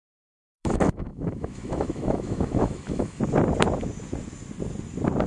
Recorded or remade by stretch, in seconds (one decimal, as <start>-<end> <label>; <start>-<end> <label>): 0.0-3.2 remade; 3.2-5.3 recorded